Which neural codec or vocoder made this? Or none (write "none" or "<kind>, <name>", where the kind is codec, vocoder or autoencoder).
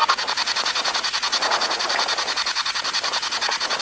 vocoder, Vocos